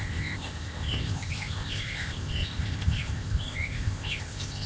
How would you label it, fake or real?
fake